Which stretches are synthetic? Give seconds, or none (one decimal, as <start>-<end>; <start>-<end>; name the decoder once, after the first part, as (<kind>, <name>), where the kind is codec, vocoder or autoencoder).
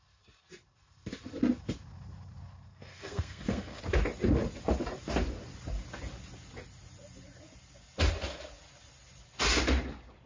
2.7-3.8 (codec, SNAC)